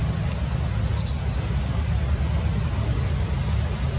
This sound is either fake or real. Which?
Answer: real